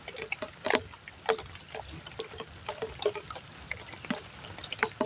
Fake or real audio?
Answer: real